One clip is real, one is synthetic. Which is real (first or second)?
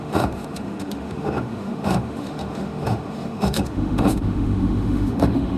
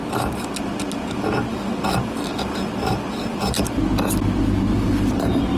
second